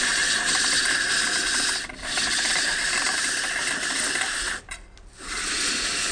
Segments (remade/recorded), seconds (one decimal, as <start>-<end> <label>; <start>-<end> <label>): 0.0-6.1 recorded